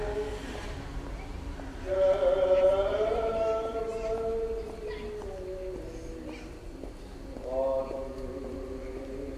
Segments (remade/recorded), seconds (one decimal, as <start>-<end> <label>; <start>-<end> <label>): 0.0-0.4 recorded; 0.4-3.8 remade; 3.8-9.4 recorded